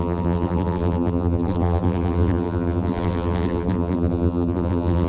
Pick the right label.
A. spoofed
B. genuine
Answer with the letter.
A